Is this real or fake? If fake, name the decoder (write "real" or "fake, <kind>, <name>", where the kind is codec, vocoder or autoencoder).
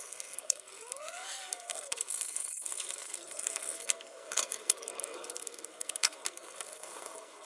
fake, codec, SNAC